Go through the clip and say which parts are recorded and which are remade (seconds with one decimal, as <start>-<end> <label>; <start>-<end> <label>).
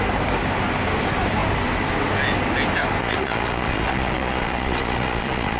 0.0-3.0 recorded; 3.0-5.6 remade